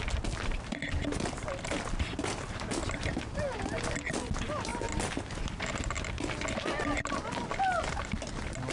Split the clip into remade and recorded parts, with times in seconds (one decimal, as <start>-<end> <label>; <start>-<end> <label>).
0.0-8.7 recorded